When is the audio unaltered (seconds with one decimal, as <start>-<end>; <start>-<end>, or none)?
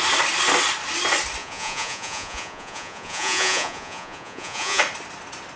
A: 0.0-1.4; 4.8-5.6